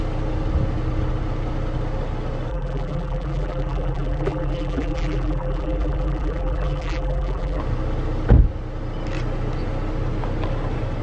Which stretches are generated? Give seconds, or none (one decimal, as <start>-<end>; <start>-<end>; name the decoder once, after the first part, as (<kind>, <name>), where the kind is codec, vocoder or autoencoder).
2.5-7.6 (vocoder, BigVGAN v2)